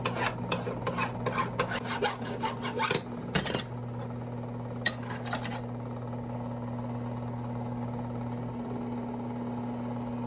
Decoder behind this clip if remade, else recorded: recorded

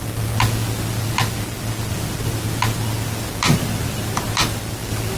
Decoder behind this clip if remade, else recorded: recorded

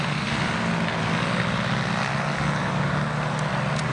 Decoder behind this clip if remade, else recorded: recorded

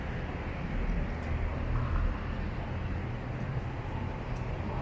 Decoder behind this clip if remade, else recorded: recorded